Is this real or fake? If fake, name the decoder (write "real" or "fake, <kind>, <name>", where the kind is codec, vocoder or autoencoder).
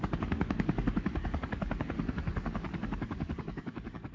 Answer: fake, codec, DAC